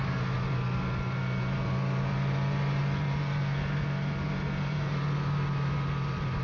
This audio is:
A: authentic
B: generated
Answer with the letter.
A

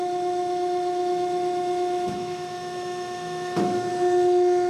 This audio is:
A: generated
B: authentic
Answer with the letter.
A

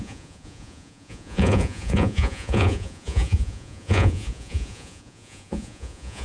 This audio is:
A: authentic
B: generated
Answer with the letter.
B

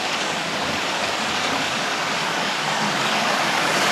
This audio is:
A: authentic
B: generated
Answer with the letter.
B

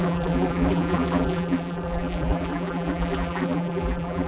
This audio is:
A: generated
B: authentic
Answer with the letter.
A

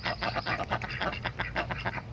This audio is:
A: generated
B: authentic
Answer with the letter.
B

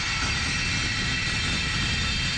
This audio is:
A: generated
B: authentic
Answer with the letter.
B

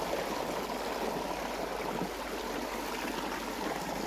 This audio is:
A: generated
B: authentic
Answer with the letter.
B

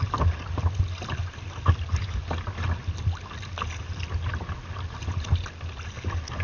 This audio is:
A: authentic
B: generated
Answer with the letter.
A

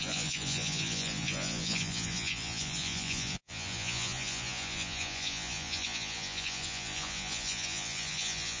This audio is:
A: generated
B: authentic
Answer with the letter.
A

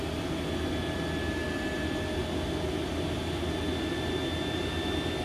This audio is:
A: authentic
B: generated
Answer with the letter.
A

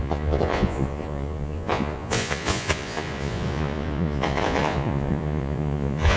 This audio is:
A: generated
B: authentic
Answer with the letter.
A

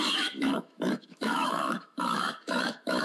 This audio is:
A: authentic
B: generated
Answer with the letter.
B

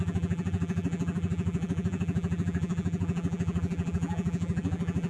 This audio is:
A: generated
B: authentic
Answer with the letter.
A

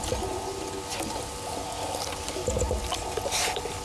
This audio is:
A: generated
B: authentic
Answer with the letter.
B